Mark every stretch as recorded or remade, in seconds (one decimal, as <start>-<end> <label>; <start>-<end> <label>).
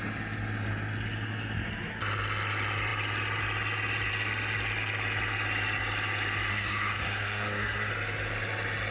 0.0-6.5 recorded; 6.5-7.9 remade; 7.9-8.9 recorded